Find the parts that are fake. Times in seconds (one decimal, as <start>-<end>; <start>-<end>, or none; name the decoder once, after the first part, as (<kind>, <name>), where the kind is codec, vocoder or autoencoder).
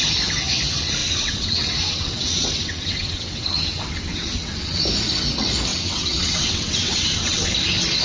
1.0-4.8 (vocoder, WaveNeXt); 5.7-7.5